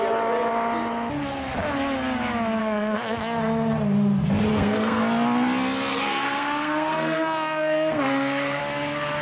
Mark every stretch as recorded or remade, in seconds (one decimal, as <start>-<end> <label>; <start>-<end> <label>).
0.0-2.6 recorded; 2.6-3.2 remade; 3.2-4.5 recorded; 4.5-5.0 remade; 5.0-5.9 recorded; 5.9-8.6 remade; 8.6-9.2 recorded